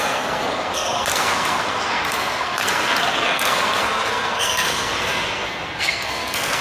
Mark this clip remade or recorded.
remade